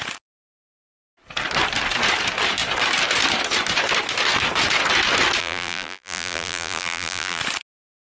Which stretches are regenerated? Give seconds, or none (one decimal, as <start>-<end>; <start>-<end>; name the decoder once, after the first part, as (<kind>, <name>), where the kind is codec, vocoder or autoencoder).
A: 5.4-7.4 (vocoder, BigVGAN v2)